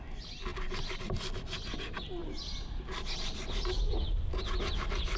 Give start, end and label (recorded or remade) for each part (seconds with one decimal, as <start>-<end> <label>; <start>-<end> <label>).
0.0-2.2 recorded; 2.2-2.8 remade; 2.8-5.2 recorded